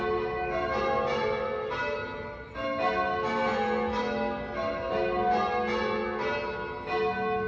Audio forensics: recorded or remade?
recorded